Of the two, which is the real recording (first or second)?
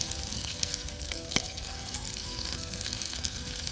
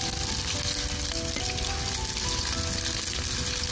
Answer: second